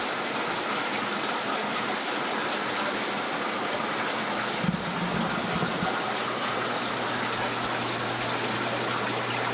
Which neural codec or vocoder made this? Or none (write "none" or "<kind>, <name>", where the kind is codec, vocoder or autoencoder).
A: none